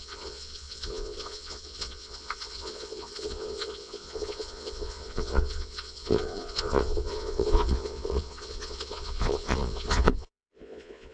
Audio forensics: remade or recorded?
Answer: remade